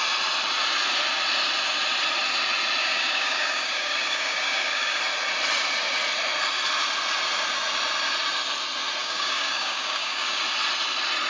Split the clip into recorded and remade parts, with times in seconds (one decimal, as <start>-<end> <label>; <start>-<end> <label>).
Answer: 0.0-2.8 recorded; 2.8-5.0 remade; 5.0-9.0 recorded; 9.0-10.4 remade; 10.4-11.3 recorded